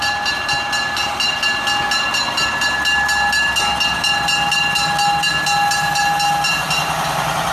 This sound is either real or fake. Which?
real